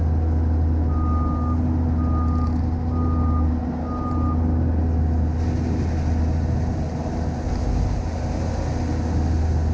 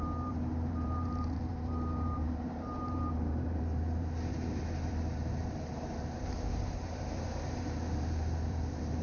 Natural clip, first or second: first